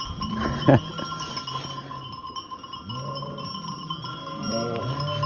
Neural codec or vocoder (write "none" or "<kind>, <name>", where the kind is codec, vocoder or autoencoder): none